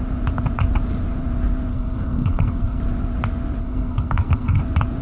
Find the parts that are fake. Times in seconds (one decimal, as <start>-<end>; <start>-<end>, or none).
1.7-2.8; 3.6-4.6